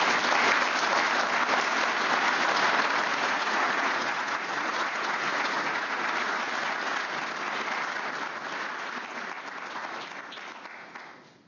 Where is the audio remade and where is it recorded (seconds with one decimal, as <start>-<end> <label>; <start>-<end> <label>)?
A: 0.0-3.1 recorded; 3.1-6.0 remade; 6.0-11.5 recorded